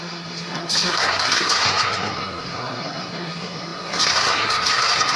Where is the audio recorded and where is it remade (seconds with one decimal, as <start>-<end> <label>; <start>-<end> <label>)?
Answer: 0.0-5.2 remade